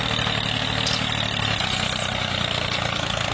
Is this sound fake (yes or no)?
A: no